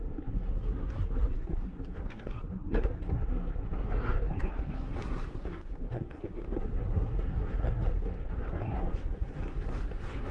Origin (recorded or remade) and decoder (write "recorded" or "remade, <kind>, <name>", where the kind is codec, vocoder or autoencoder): remade, codec, SNAC